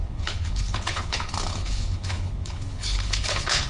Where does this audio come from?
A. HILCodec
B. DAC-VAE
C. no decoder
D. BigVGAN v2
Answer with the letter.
A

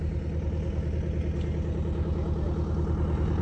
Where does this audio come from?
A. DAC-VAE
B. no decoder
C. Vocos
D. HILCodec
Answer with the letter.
B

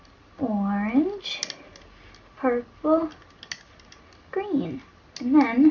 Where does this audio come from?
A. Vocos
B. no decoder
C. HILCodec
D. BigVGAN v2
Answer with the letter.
B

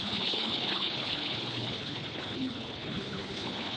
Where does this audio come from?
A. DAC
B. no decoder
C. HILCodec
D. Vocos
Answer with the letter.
C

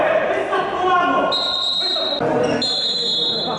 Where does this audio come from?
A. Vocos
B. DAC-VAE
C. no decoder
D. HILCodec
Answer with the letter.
C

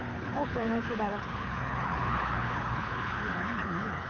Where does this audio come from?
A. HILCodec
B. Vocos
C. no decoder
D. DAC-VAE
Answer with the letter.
A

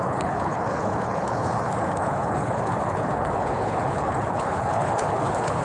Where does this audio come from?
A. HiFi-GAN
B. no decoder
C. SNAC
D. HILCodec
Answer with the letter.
D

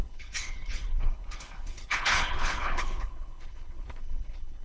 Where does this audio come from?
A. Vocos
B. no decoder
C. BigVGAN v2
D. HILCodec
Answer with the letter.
D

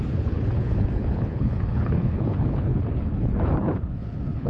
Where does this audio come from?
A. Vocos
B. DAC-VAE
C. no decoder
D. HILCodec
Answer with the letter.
D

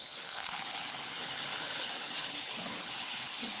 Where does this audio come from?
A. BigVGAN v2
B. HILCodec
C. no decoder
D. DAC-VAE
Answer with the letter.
B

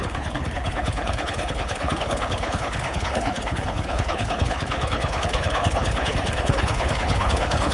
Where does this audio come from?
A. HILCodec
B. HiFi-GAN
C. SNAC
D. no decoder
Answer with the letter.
A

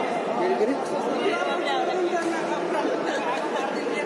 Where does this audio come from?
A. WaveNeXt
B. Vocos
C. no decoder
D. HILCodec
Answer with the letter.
C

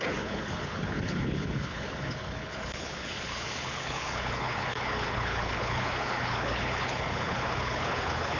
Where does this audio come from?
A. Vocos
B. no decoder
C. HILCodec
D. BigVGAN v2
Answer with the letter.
C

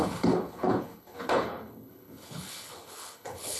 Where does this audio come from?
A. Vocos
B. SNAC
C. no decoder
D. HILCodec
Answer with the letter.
D